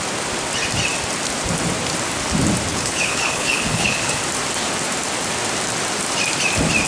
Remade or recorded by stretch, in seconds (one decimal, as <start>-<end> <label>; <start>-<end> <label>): 0.0-2.7 recorded; 2.7-4.2 remade; 4.2-6.9 recorded